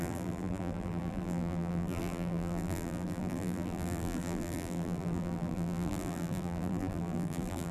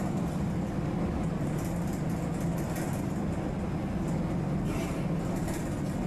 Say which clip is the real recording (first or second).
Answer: second